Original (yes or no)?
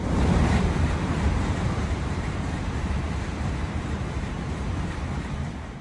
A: no